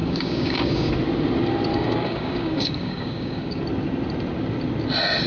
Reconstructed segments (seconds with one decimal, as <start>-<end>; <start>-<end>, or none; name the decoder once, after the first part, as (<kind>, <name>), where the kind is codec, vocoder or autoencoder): 0.0-0.9 (codec, DAC); 1.7-3.6